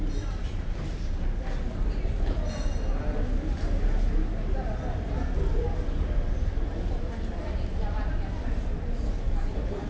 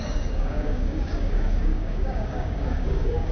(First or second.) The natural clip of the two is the first